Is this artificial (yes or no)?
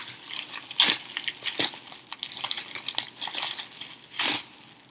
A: no